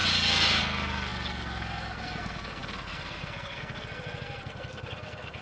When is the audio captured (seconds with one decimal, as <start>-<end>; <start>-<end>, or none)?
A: 0.0-0.6